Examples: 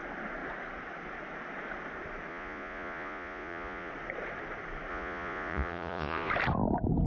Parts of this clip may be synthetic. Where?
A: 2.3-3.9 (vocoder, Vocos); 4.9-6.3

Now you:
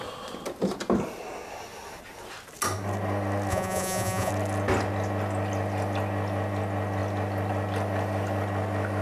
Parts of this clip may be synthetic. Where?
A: 3.5-4.3 (vocoder, Vocos)

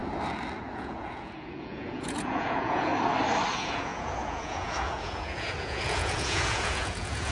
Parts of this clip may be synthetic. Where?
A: 0.7-2.9 (vocoder, Vocos); 3.5-7.3

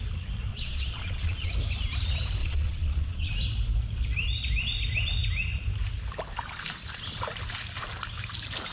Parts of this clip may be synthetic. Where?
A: 0.5-1.5 (vocoder, Vocos); 2.4-3.3

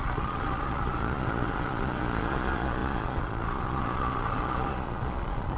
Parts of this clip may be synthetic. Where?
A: 0.0-5.6 (vocoder, Vocos)

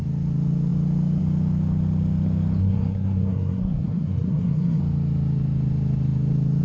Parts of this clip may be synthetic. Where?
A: 2.6-4.8 (codec, SNAC)

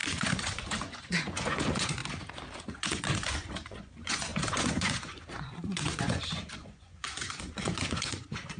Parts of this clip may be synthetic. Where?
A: 0.0-2.0 (vocoder, Vocos); 2.6-8.6